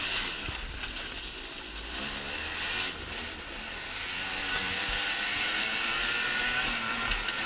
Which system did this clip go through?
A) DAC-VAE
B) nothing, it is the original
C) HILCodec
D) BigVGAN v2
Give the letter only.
B